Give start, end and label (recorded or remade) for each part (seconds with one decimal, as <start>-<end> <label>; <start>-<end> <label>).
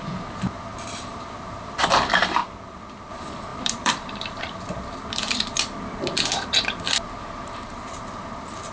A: 0.0-2.4 remade; 2.4-3.1 recorded; 3.1-8.7 remade